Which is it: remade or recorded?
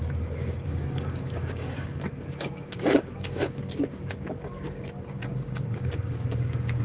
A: remade